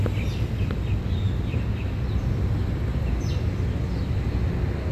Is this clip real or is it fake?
real